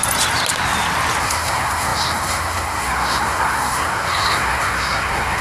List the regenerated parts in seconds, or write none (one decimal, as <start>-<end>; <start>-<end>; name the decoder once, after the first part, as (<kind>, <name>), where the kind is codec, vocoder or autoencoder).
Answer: 1.2-5.4 (codec, SNAC)